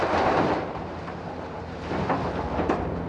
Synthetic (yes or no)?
yes